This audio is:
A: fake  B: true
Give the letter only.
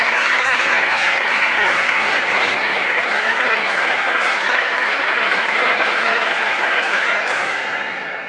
A